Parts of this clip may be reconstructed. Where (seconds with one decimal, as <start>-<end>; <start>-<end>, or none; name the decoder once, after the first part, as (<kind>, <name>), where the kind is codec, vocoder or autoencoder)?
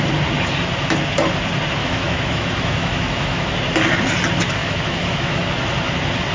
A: 1.8-3.5 (autoencoder, DAC-VAE); 4.6-5.5